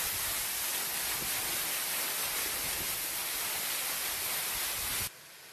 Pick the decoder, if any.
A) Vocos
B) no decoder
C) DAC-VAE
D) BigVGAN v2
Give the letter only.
B